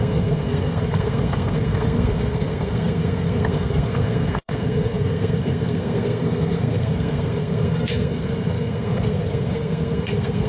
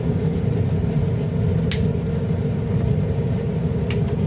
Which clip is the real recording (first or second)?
second